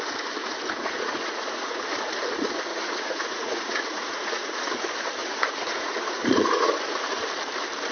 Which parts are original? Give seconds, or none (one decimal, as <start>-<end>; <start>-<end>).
0.0-0.4; 1.8-2.7; 4.8-5.2; 6.7-7.9